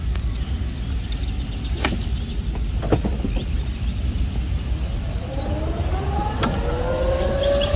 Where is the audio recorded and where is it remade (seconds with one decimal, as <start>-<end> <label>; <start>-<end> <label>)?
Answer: 0.0-7.8 recorded